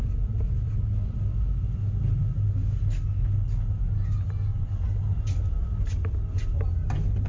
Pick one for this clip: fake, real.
real